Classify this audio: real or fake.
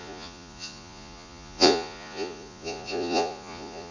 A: fake